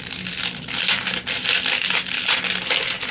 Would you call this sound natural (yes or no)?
yes